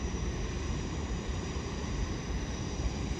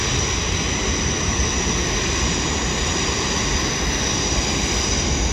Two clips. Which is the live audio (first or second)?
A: second